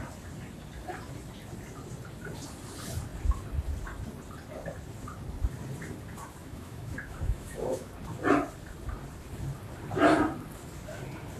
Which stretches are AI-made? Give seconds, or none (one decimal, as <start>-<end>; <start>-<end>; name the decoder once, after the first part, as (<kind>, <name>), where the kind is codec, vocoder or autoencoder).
6.4-7.9 (autoencoder, DAC-VAE)